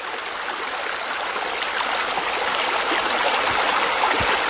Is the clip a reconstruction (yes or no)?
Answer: no